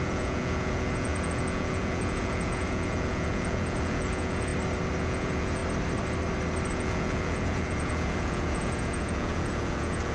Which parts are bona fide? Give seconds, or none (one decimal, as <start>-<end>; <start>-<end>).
4.5-5.0; 5.6-6.7